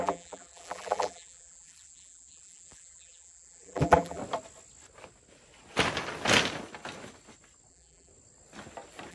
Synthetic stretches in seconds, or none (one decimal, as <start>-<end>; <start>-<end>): 0.0-4.2; 7.7-8.1